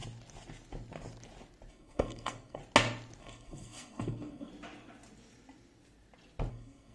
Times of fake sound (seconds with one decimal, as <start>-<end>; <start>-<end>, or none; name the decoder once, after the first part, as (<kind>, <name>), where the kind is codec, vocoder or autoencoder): 1.7-2.6 (codec, SNAC); 3.2-4.5; 6.5-6.9